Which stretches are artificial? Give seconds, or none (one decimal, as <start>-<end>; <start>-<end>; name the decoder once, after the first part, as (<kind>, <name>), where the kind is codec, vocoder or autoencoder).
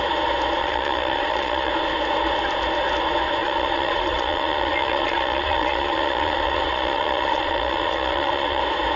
0.6-1.7 (vocoder, Vocos); 3.4-8.6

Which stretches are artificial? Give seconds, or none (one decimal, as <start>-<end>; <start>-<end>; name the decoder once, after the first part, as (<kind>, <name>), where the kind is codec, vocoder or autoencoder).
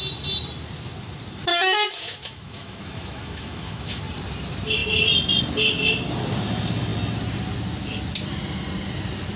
1.5-4.0 (autoencoder, DAC-VAE)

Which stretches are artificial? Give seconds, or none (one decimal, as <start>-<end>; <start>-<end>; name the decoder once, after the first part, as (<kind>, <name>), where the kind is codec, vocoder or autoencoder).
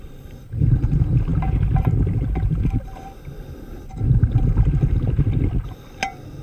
none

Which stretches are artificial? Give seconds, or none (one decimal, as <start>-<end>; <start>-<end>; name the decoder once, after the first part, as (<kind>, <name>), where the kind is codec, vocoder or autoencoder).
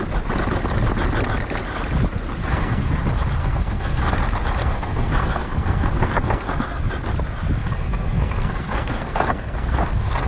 2.4-3.0 (codec, SNAC); 3.4-4.1; 4.6-6.9; 7.6-10.3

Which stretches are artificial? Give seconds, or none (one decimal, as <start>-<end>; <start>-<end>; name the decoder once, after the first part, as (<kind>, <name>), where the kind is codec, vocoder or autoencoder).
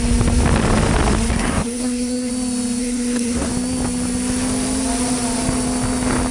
1.3-2.3 (codec, SNAC); 2.8-3.5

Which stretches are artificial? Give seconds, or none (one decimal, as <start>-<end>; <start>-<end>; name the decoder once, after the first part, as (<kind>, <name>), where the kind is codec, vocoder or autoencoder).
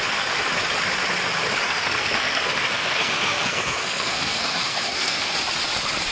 1.6-5.3 (codec, SNAC)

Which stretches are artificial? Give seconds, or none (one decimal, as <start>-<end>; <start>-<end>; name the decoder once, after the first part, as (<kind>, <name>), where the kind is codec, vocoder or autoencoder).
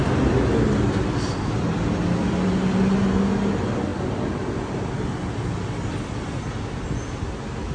none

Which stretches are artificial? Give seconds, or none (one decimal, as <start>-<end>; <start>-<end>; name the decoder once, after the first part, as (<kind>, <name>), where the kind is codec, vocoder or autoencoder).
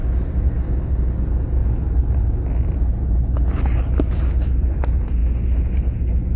none